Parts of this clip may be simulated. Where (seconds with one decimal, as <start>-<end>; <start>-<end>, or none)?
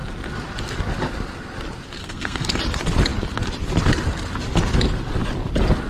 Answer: 2.0-2.6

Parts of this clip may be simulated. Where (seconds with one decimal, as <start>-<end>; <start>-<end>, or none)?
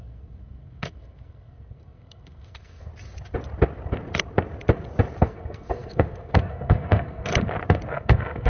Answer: 0.0-2.9; 5.2-7.3; 7.9-8.5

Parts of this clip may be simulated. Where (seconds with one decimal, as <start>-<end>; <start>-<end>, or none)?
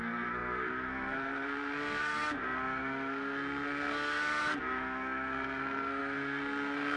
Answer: 0.0-7.0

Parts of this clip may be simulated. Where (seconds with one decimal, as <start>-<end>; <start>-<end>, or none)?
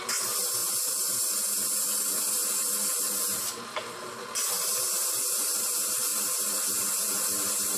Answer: none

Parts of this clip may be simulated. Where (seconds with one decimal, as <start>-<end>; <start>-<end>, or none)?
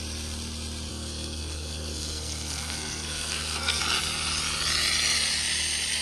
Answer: 0.9-3.8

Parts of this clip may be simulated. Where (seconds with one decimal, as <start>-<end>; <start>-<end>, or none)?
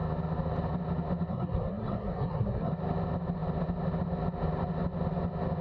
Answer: 1.3-2.7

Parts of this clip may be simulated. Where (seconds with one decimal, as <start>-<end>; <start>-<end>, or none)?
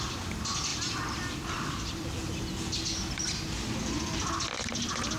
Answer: none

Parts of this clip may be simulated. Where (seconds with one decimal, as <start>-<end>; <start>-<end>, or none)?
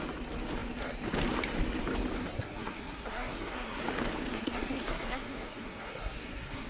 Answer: 2.2-3.8; 4.3-6.7